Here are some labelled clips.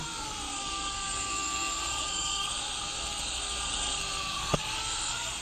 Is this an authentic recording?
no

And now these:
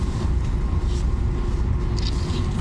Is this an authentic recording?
yes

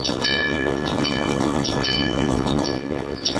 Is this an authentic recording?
no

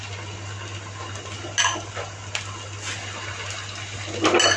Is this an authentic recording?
yes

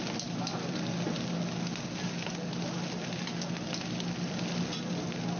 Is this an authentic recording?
yes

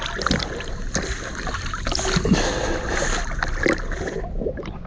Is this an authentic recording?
yes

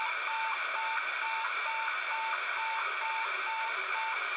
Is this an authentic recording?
yes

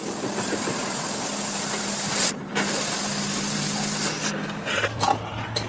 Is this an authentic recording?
yes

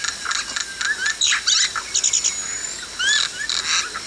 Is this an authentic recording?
yes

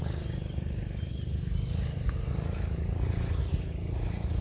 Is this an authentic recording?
yes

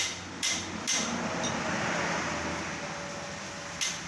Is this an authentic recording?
yes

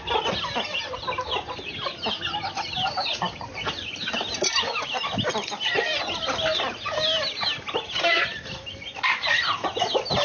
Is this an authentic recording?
yes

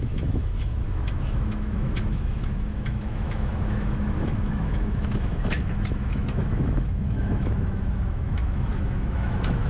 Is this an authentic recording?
no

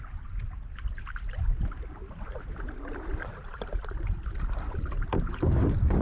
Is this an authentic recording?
yes